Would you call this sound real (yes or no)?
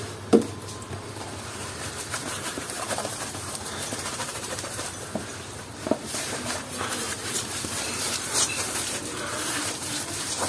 no